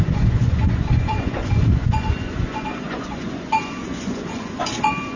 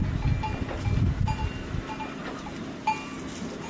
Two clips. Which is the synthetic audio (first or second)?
first